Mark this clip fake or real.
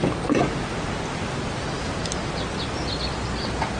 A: real